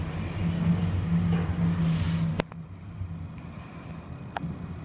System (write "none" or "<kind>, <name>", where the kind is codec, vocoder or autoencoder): none